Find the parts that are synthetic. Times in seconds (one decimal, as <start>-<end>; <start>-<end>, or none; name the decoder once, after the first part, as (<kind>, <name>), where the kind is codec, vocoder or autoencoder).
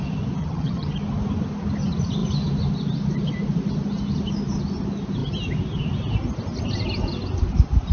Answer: 0.4-1.0 (vocoder, HiFi-GAN)